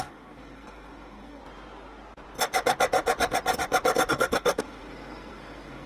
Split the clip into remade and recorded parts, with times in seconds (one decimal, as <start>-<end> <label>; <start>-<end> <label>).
0.0-1.4 remade; 1.4-4.1 recorded; 4.1-5.9 remade